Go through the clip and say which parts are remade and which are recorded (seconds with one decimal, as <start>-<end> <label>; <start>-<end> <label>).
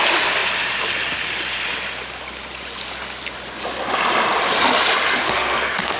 0.0-5.2 recorded; 5.2-6.0 remade